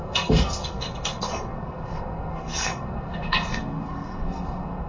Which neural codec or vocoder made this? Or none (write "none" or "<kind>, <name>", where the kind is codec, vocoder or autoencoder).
codec, SNAC